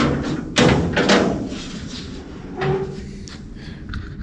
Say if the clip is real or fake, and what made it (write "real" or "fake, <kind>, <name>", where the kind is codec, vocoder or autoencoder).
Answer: real